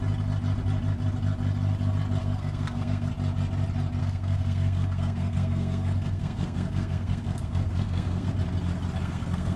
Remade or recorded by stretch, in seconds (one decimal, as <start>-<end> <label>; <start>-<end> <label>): 0.0-2.2 recorded; 2.2-3.1 remade; 3.1-4.0 recorded; 4.0-8.3 remade; 8.3-9.0 recorded; 9.0-9.6 remade